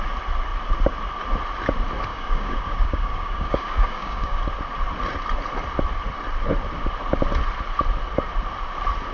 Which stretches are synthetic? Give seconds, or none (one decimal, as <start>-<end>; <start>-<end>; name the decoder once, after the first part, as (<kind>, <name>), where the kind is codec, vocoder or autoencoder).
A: 2.1-4.4 (codec, DAC)

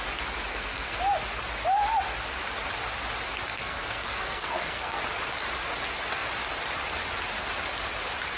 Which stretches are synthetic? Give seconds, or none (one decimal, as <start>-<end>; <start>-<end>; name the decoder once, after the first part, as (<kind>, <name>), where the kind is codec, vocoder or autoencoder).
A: 0.5-1.0 (codec, SNAC); 3.5-5.0